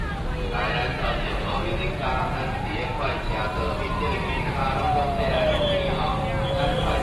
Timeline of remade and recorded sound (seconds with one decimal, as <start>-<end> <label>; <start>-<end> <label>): 0.0-1.0 recorded; 1.0-3.3 remade; 3.3-7.0 recorded